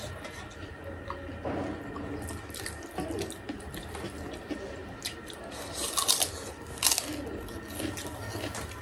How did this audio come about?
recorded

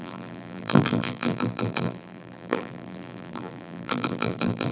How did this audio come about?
remade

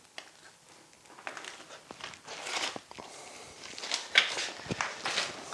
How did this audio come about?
recorded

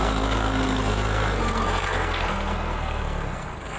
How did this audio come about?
remade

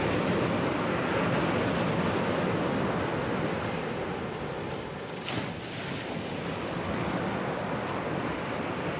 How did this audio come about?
recorded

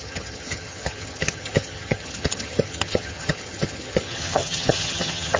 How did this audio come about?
remade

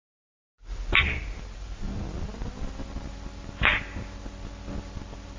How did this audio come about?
recorded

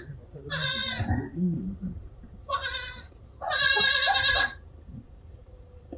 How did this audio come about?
remade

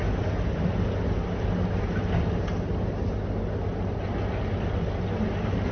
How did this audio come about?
recorded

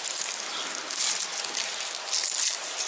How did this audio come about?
recorded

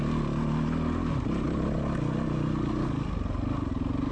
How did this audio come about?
recorded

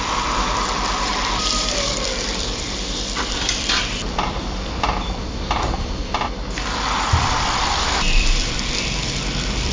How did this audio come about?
remade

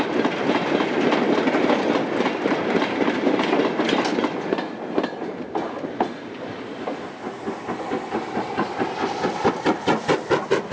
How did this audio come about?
recorded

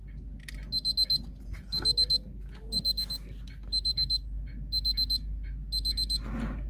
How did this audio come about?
recorded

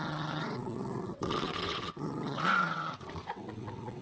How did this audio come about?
remade